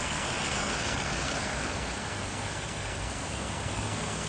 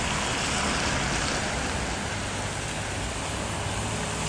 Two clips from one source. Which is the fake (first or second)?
first